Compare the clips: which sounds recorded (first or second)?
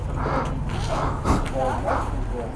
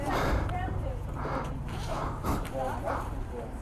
first